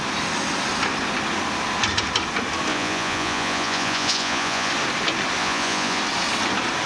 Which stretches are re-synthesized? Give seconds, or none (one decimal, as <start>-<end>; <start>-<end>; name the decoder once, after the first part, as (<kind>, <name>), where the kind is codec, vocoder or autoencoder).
2.7-4.7 (vocoder, Vocos); 5.4-6.0